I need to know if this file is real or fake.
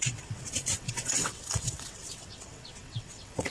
fake